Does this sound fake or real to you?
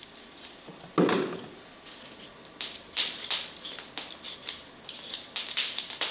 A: real